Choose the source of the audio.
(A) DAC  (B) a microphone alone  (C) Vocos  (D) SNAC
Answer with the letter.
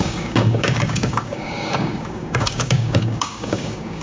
A